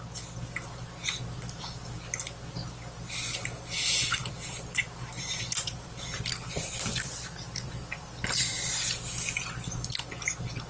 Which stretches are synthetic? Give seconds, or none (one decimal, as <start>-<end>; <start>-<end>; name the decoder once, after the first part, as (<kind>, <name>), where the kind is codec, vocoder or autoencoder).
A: 4.2-8.5 (vocoder, BigVGAN v2)